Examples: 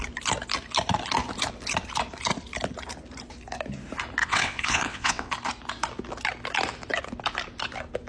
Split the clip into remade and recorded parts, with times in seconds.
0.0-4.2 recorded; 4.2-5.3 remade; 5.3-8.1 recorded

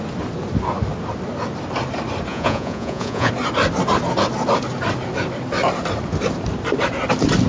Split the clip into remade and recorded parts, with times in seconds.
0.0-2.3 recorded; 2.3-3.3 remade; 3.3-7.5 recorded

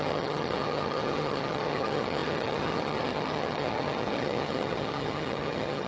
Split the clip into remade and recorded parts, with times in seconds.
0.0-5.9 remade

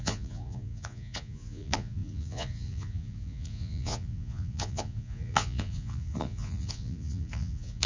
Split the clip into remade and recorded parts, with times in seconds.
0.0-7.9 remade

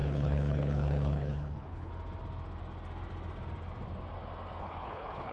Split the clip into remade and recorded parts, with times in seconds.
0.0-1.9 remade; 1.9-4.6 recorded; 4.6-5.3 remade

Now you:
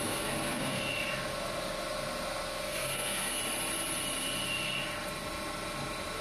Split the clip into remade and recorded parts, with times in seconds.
0.0-0.8 remade; 0.8-2.7 recorded; 2.7-3.4 remade; 3.4-6.2 recorded

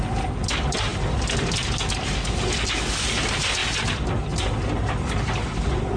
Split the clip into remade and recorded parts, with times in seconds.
0.0-6.0 recorded